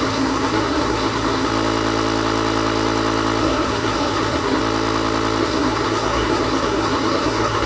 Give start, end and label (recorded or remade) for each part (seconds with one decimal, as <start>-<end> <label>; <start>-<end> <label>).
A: 0.0-1.5 remade; 1.5-3.4 recorded; 3.4-4.6 remade; 4.6-5.4 recorded; 5.4-7.7 remade